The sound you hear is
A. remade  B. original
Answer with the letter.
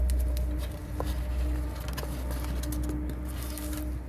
B